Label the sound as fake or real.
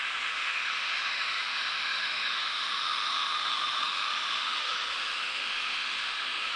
fake